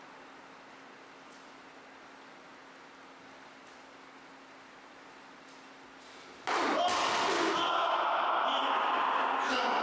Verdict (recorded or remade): recorded